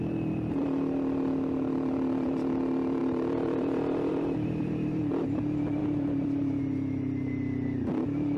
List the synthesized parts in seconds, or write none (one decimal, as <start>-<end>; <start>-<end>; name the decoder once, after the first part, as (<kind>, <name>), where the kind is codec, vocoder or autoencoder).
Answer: 3.0-5.0 (vocoder, BigVGAN v2); 5.8-6.6